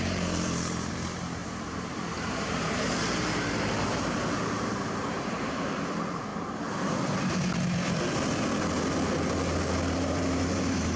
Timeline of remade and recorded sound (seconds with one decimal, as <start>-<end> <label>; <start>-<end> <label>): 0.0-6.3 remade; 6.3-10.0 recorded; 10.0-11.0 remade